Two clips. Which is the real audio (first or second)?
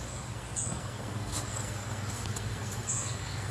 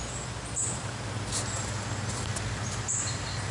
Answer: second